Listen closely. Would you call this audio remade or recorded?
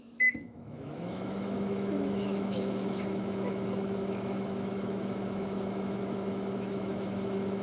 remade